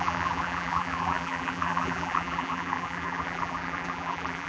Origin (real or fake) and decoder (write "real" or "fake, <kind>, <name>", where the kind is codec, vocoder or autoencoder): fake, vocoder, BigVGAN v2